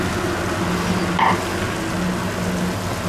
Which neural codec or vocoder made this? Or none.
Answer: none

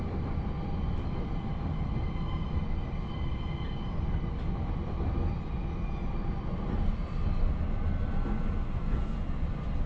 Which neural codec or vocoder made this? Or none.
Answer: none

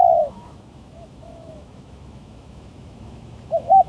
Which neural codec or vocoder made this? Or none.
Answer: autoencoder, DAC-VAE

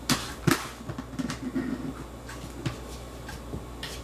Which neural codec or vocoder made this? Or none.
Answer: none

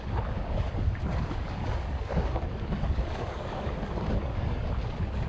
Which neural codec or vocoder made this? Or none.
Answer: codec, DAC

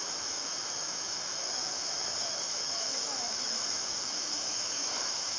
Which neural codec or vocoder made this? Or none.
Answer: autoencoder, DAC-VAE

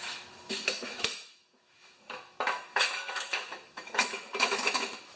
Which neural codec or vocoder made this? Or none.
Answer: autoencoder, DAC-VAE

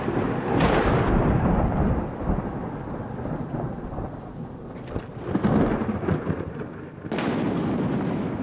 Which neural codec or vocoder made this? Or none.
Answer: none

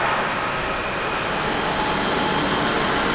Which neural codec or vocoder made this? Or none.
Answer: none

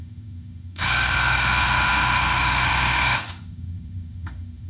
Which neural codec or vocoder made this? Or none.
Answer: autoencoder, DAC-VAE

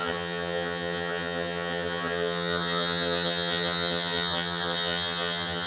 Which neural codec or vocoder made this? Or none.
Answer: vocoder, HiFi-GAN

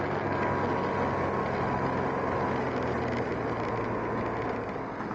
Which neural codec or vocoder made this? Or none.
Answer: none